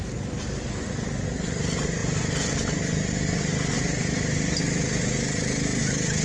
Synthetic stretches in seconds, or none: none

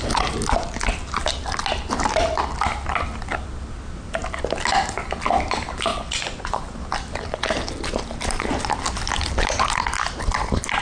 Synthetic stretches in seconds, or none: 5.9-6.6

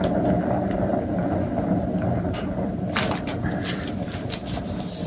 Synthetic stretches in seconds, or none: none

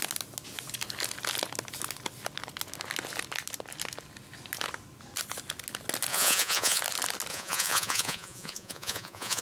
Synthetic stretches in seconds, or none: 6.1-6.8; 7.3-9.4

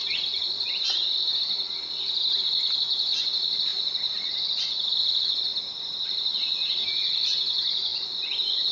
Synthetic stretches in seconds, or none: 0.0-0.5; 5.5-6.1

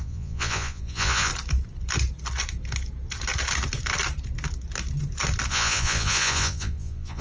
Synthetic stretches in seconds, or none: 0.0-1.3; 5.5-7.2

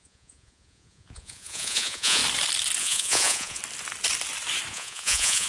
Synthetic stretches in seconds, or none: 0.0-2.2; 2.8-3.6; 4.7-5.5